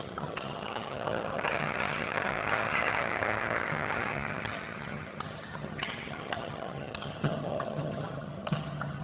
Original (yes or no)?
no